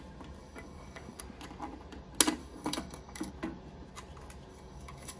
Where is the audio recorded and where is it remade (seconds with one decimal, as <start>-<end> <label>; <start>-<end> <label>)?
0.0-0.4 recorded; 0.4-1.2 remade; 1.2-2.4 recorded; 2.4-3.3 remade; 3.3-4.5 recorded; 4.5-5.2 remade